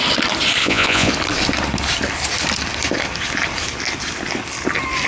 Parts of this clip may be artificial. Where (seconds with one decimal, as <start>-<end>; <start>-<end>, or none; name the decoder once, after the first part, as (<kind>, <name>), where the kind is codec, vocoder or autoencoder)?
0.6-1.1 (vocoder, Vocos)